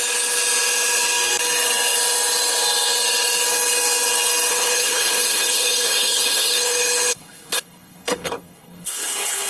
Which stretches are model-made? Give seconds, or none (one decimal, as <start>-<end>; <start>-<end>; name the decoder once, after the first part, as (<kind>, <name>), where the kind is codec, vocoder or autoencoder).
4.5-9.5 (codec, HILCodec)

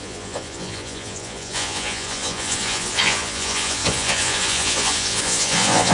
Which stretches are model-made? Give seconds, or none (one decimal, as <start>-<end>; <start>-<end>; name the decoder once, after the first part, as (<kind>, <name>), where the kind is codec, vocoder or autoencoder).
0.0-5.9 (vocoder, Vocos)

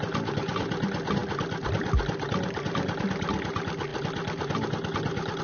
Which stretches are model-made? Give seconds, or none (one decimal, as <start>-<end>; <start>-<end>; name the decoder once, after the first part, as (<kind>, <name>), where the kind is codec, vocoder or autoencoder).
none

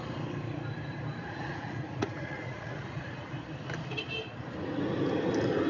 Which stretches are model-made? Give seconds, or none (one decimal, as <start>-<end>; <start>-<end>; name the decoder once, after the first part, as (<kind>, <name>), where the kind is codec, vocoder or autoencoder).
1.2-3.0 (vocoder, Vocos)

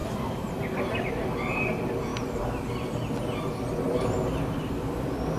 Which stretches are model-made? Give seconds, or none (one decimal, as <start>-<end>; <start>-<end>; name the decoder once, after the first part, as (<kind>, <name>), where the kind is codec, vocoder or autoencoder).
none